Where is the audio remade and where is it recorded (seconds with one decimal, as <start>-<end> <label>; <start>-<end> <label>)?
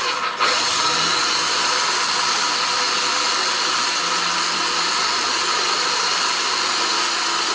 0.0-7.5 recorded